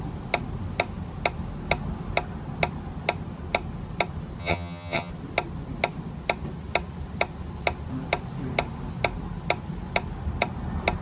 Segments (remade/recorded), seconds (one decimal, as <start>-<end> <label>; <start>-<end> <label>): 0.0-4.4 recorded; 4.4-5.1 remade; 5.1-11.0 recorded